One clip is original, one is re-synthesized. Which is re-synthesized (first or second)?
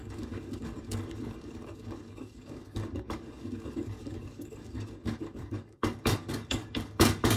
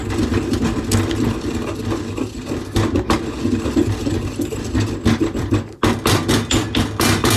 first